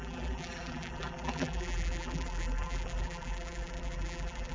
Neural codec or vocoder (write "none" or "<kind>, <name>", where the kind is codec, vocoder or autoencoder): vocoder, BigVGAN v2